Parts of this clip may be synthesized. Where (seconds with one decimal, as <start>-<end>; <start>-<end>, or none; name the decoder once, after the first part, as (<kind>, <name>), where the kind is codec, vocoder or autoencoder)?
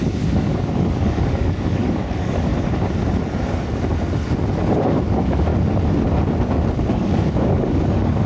0.0-2.5 (codec, DAC); 4.7-5.5; 6.9-8.3